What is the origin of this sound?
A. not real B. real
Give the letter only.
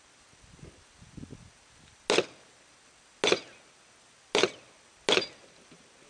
B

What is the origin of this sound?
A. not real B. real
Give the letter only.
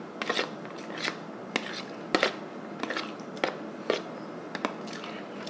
B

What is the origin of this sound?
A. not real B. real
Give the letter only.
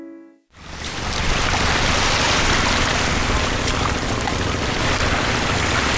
B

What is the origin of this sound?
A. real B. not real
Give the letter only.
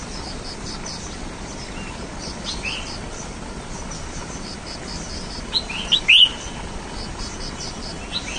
A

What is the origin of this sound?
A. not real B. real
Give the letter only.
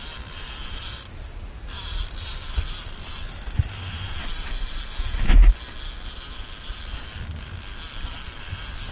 B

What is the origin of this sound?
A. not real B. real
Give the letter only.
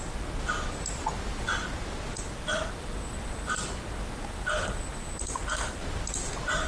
B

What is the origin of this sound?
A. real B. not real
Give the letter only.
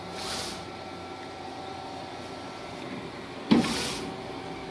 A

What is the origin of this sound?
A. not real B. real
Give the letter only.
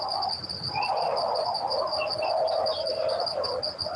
B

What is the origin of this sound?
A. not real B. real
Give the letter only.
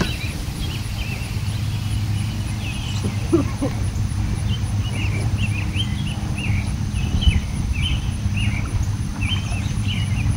B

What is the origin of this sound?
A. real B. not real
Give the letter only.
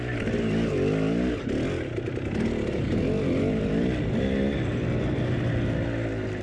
A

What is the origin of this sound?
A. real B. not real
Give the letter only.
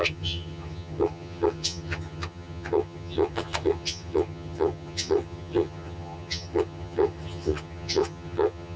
B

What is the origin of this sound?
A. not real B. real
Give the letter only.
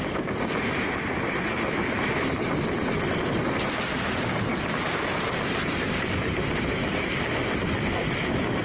B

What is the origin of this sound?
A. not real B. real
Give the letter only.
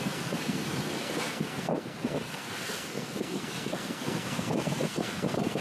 A